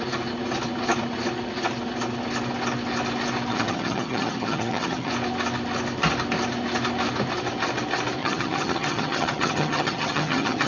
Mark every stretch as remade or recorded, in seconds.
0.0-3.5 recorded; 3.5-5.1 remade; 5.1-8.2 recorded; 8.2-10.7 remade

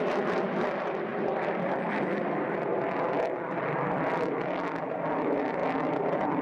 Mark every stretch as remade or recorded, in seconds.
0.0-6.4 recorded

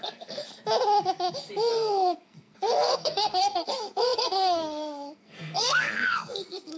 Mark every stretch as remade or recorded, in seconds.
0.0-0.4 remade; 0.4-1.7 recorded; 1.7-6.8 remade

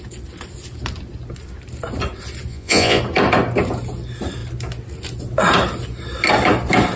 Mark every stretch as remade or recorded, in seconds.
0.0-2.5 recorded; 2.5-3.0 remade; 3.0-7.0 recorded